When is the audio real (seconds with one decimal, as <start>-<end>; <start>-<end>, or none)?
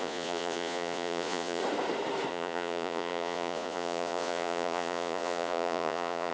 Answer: 1.6-2.3